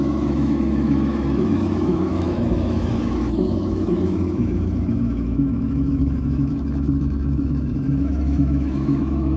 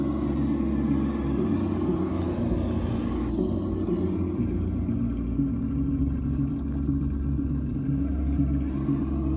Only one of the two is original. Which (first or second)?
second